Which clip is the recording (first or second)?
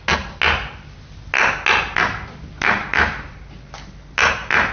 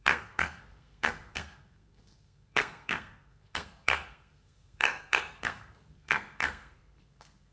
first